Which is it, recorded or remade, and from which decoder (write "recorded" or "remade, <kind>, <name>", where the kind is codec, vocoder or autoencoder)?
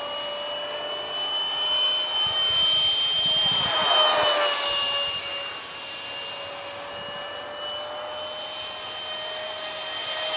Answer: recorded